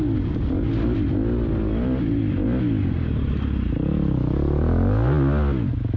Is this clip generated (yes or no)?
no